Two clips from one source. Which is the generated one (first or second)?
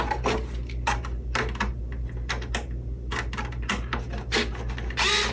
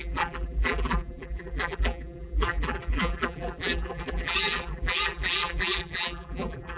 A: second